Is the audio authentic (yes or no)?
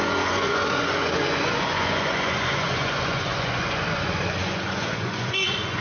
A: no